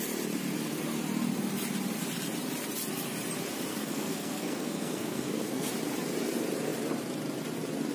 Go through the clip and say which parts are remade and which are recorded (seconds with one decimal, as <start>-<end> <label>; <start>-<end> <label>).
0.0-3.7 recorded; 3.7-5.7 remade; 5.7-7.9 recorded